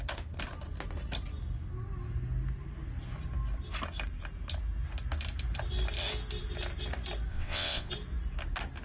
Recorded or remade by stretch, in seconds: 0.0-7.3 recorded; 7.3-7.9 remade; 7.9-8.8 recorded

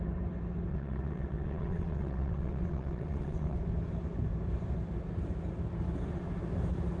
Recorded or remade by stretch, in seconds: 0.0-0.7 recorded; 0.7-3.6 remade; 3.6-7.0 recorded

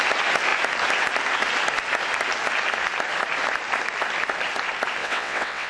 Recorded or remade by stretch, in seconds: 0.0-5.0 recorded; 5.0-5.7 remade